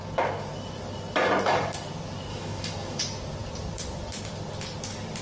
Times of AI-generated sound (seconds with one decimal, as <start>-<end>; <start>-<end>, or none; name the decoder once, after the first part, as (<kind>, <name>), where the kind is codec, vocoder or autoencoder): 2.3-3.0 (autoencoder, DAC-VAE)